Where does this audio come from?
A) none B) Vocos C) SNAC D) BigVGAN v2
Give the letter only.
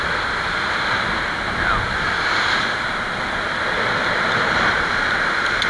A